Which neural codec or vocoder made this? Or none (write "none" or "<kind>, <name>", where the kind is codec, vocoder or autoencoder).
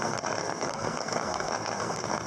codec, SNAC